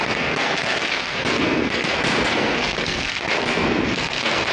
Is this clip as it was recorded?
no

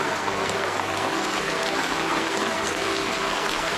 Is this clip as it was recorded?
no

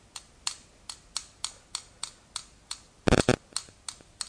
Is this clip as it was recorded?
yes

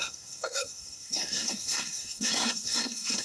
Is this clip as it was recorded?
no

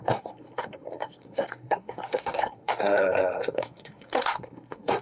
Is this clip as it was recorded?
no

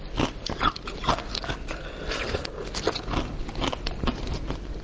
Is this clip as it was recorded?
yes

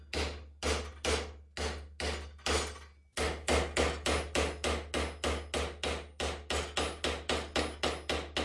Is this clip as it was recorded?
yes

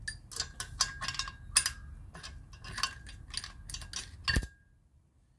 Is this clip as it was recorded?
yes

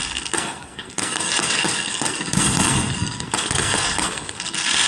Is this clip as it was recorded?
no